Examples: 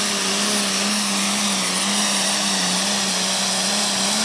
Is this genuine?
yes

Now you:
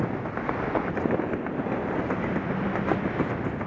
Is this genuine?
yes